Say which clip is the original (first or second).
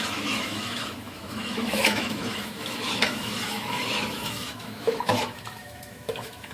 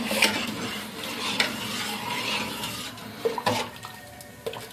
second